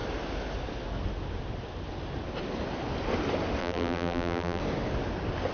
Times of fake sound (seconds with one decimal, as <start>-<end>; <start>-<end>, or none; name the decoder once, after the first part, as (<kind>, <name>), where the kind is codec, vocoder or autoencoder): 3.6-4.6 (vocoder, BigVGAN v2)